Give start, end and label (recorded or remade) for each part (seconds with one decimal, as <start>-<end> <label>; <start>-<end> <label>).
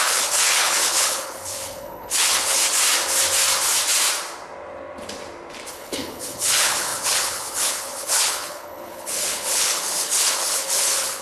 0.0-2.6 remade; 2.6-5.7 recorded; 5.7-11.2 remade